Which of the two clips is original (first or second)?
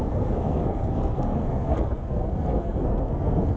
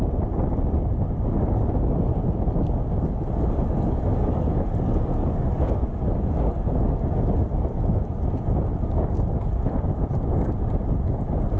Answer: second